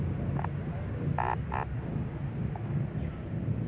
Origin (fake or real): real